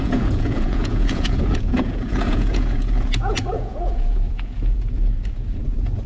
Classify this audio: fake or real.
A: fake